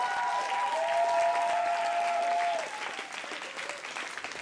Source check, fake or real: real